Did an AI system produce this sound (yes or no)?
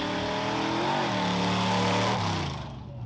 no